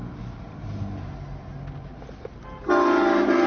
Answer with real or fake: real